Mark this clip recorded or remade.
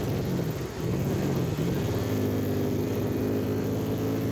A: recorded